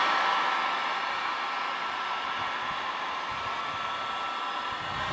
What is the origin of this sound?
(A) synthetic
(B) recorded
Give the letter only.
B